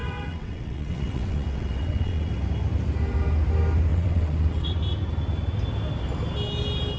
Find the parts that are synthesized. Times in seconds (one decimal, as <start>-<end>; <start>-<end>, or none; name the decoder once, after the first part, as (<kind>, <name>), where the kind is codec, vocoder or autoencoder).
0.0-2.3 (vocoder, WaveNeXt); 3.9-4.7